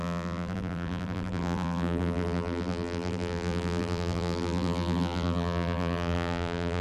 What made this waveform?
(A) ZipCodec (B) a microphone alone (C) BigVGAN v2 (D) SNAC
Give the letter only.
C